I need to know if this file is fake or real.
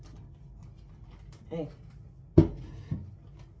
real